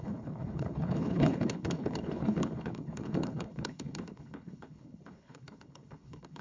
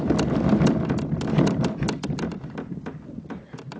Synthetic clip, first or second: first